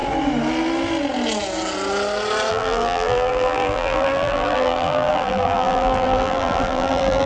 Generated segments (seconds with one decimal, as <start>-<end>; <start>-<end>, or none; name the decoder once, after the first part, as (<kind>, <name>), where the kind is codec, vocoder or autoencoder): 2.5-7.3 (vocoder, BigVGAN v2)